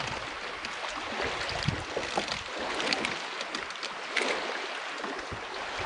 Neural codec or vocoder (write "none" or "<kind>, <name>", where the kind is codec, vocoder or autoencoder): none